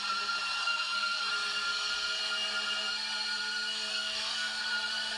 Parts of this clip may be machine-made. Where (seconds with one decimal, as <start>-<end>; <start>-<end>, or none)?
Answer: 0.6-1.3; 3.9-4.6